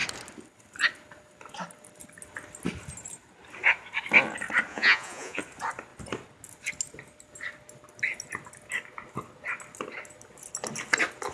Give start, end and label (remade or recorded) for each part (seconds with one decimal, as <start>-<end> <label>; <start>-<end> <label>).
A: 0.0-4.7 recorded; 4.7-5.4 remade; 5.4-11.3 recorded